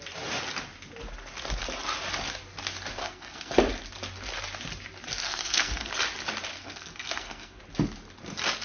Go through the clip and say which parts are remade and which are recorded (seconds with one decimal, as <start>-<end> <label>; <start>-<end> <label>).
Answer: 0.0-3.0 recorded; 3.0-3.6 remade; 3.6-5.2 recorded; 5.2-5.9 remade; 5.9-6.5 recorded; 6.5-7.6 remade; 7.6-8.6 recorded